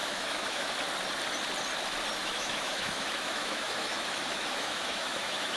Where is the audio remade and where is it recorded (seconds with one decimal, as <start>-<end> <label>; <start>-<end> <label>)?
0.0-0.7 remade; 0.7-2.2 recorded; 2.2-5.6 remade